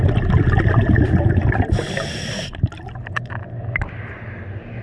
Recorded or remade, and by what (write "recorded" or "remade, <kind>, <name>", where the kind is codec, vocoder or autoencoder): recorded